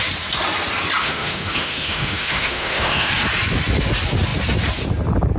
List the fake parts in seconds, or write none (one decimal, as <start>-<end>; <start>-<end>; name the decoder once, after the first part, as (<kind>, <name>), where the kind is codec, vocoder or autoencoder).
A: 1.0-3.1 (autoencoder, DAC-VAE)